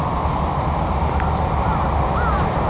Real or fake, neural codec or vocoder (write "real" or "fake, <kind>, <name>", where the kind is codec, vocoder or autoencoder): real